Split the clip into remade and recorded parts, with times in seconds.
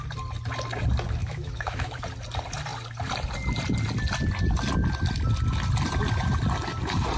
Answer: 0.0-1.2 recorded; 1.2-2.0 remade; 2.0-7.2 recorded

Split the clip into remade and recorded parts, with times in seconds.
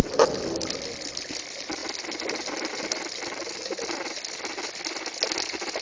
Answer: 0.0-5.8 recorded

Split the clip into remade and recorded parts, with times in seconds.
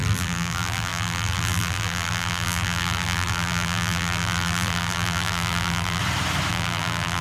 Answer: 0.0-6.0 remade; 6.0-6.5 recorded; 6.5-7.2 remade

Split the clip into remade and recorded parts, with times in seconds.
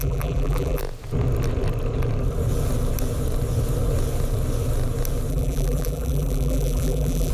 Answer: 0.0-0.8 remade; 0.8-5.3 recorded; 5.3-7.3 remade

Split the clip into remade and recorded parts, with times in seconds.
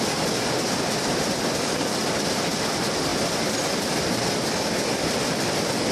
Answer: 0.0-5.9 recorded